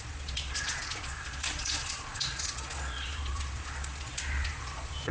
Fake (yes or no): yes